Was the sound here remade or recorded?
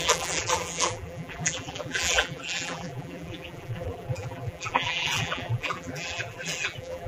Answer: remade